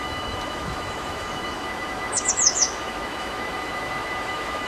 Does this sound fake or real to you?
fake